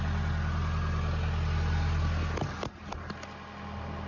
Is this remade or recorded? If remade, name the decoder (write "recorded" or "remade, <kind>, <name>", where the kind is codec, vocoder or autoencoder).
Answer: recorded